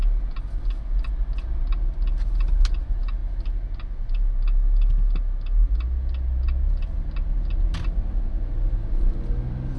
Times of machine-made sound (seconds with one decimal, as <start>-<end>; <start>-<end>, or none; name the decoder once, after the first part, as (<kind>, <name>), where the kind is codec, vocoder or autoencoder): none